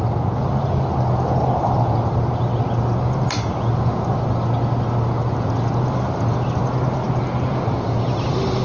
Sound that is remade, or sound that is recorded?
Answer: recorded